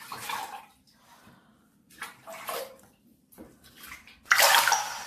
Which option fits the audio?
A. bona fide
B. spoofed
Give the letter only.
B